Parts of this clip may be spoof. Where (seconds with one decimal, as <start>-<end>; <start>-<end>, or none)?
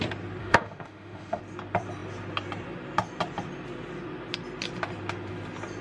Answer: 0.4-1.4